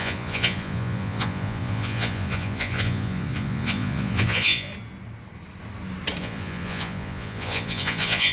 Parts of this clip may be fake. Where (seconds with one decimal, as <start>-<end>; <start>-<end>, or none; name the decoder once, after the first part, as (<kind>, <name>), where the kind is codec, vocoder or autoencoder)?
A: 0.0-4.7 (vocoder, Vocos); 6.2-8.3